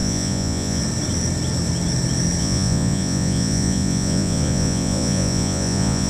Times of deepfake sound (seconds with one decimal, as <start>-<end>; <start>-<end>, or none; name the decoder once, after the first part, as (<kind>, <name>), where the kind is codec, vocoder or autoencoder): 0.0-0.8 (vocoder, Vocos); 2.4-6.1